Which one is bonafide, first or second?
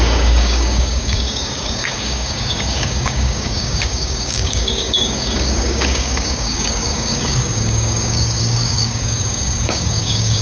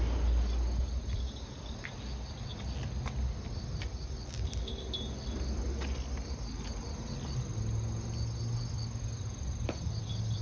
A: second